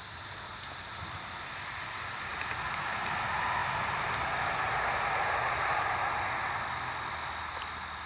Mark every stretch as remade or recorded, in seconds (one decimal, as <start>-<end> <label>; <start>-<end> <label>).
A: 0.0-8.1 recorded